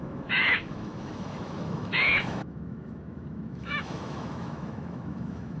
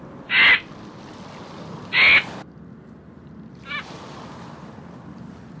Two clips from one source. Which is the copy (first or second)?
first